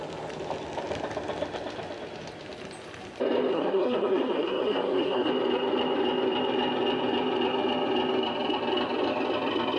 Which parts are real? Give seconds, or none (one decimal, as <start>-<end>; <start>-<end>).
0.0-3.5; 5.3-9.8